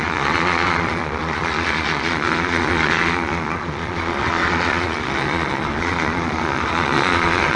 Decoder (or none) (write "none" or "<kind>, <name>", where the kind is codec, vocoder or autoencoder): vocoder, Vocos